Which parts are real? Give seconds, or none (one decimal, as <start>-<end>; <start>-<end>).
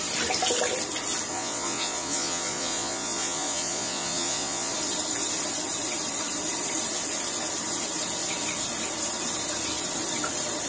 0.0-1.3; 4.7-10.7